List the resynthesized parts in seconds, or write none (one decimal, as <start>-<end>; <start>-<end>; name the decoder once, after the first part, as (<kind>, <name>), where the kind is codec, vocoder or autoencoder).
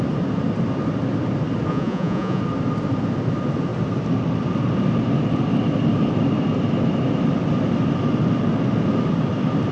1.7-2.4 (vocoder, Vocos)